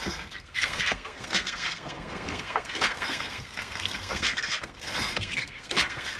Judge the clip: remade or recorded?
remade